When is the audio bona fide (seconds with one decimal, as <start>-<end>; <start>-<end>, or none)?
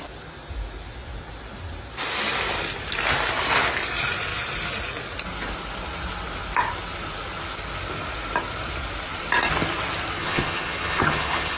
0.0-10.2